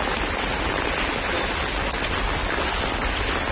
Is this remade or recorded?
recorded